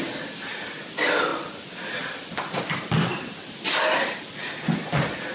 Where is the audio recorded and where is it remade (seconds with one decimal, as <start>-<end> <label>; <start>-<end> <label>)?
0.0-5.3 recorded